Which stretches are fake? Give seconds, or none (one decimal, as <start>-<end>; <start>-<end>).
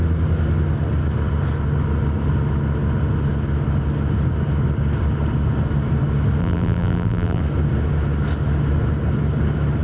6.4-7.4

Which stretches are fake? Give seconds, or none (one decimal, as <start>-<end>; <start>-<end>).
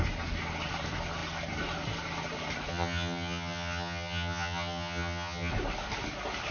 2.7-5.5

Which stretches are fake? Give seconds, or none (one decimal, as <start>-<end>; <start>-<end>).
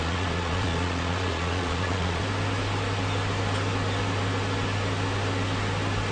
0.0-2.2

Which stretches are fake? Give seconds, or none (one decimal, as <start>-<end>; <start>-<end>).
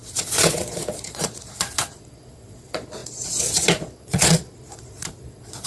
0.0-5.7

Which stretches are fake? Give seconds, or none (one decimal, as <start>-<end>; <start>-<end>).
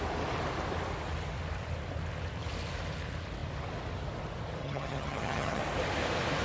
4.6-5.6